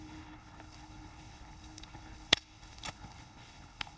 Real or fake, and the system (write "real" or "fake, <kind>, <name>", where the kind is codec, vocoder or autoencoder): fake, codec, HILCodec